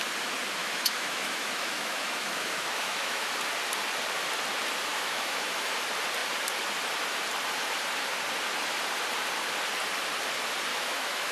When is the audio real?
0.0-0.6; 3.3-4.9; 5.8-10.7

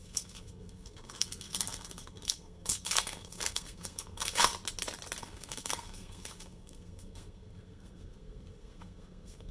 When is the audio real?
4.5-5.2

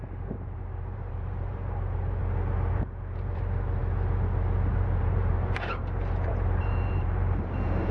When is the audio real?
2.2-2.7; 3.8-4.7

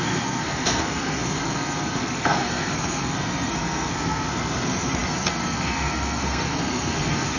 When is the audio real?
none